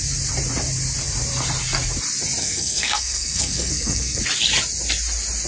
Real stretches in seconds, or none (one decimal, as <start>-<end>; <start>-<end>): 0.0-2.4; 4.2-5.5